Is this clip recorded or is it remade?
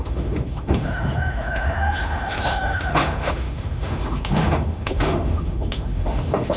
remade